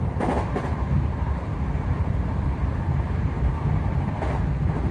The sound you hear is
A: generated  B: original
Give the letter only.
A